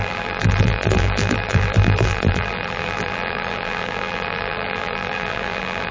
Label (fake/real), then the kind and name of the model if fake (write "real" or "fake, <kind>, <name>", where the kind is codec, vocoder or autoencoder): fake, vocoder, BigVGAN v2